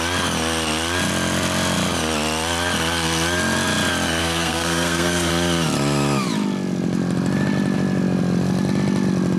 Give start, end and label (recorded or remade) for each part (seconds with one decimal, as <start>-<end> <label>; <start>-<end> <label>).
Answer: 0.0-4.2 recorded; 4.2-5.3 remade; 5.3-9.4 recorded